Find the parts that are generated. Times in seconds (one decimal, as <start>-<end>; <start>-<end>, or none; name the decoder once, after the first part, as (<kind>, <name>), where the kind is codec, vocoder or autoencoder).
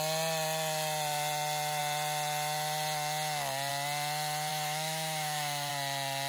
4.5-5.7 (autoencoder, DAC-VAE)